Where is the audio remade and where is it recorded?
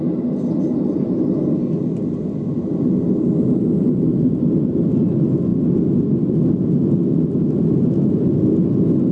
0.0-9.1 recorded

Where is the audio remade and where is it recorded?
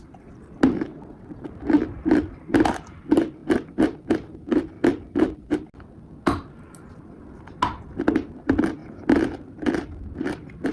0.0-0.9 recorded; 0.9-1.5 remade; 1.5-10.7 recorded